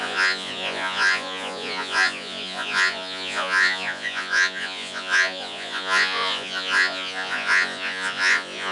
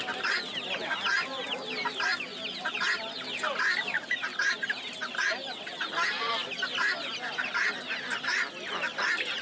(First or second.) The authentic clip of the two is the second